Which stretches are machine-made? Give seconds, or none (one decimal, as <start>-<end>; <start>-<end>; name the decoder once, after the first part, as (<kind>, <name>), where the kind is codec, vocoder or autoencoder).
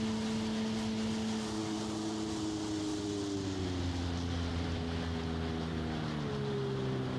none